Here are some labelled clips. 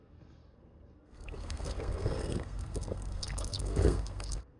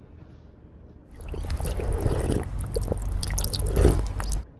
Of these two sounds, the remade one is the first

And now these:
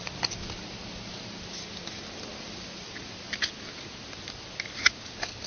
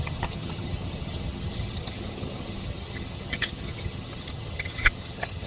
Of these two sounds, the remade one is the second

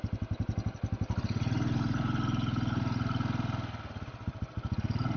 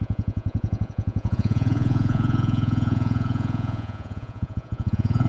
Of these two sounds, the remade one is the second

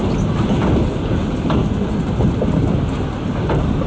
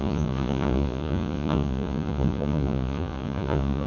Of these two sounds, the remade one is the second